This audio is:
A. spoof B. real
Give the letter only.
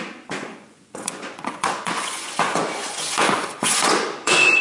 A